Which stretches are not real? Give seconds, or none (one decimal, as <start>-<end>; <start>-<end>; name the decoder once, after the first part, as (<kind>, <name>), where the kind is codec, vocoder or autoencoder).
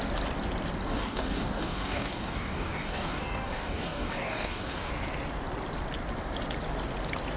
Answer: 0.9-4.9 (codec, DAC)